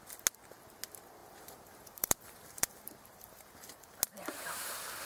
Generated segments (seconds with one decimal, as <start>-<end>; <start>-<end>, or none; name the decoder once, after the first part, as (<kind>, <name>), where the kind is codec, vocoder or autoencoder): 1.2-4.0 (vocoder, BigVGAN v2)